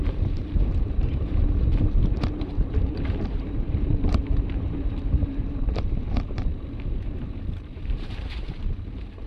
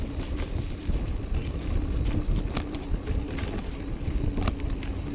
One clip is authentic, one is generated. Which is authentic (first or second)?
second